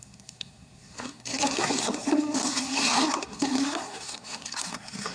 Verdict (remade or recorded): remade